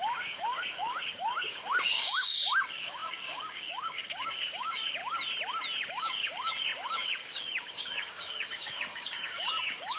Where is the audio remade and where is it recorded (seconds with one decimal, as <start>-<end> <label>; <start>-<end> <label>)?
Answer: 0.0-5.0 remade; 5.0-5.8 recorded; 5.8-10.0 remade